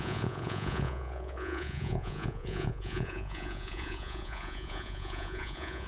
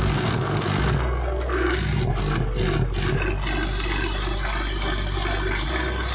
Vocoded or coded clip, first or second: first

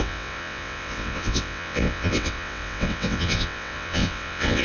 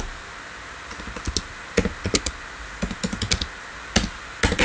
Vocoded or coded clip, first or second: first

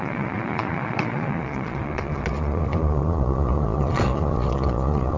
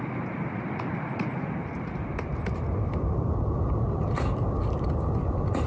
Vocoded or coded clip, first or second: first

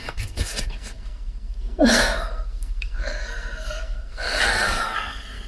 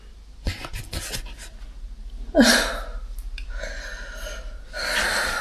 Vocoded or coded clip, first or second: first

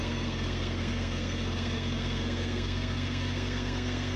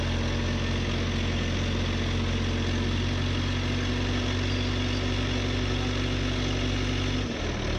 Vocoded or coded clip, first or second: first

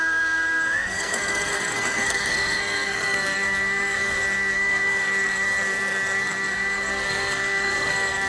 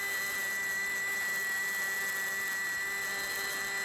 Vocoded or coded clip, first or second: first